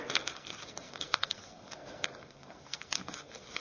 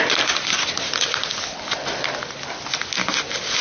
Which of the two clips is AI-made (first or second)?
first